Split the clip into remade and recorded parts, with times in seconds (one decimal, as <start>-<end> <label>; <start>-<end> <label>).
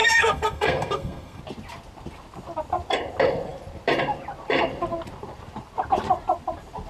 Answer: 0.0-1.4 remade; 1.4-6.9 recorded